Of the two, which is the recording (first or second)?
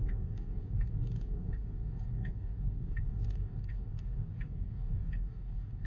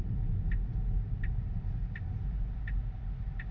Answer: second